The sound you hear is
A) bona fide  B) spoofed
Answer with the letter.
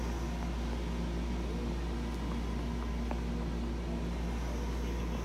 A